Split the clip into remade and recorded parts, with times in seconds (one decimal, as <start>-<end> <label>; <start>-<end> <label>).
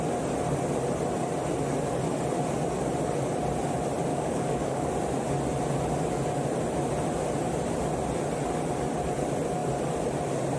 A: 0.0-4.1 recorded; 4.1-4.9 remade; 4.9-10.6 recorded